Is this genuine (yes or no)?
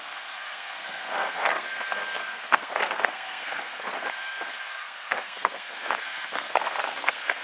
no